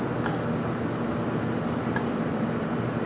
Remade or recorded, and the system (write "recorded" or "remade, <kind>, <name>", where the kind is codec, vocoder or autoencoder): recorded